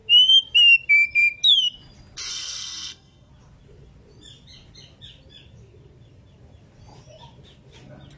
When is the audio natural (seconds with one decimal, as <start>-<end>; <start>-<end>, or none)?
0.0-2.3; 3.3-8.2